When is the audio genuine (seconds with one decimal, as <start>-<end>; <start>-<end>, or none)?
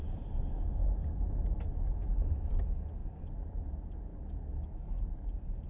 0.0-4.1; 5.1-5.7